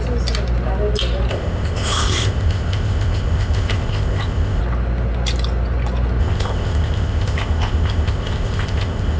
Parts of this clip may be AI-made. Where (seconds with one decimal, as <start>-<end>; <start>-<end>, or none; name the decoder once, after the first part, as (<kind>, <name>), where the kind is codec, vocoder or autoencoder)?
1.3-4.6 (codec, ZipCodec); 6.2-9.2